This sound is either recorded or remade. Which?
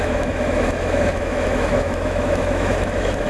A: remade